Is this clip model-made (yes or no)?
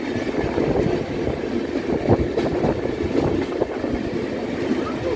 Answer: no